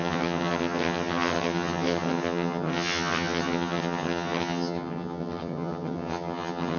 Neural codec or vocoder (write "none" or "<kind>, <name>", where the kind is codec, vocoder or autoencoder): vocoder, HiFi-GAN